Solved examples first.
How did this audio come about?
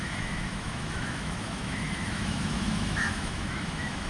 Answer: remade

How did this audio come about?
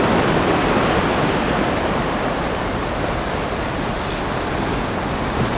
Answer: recorded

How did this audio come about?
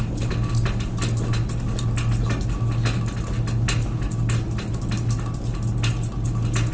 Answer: recorded